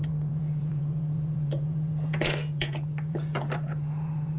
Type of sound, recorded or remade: remade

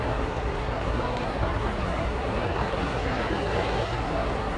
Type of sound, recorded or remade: remade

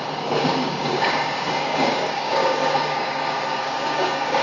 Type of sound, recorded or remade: remade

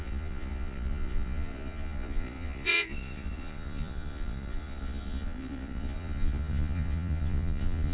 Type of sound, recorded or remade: remade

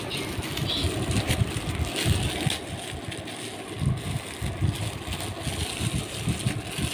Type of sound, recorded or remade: recorded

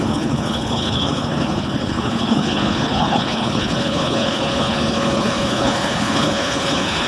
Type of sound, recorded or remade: remade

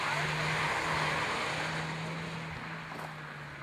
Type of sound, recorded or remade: recorded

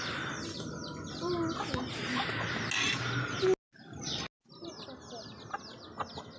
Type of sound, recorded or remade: recorded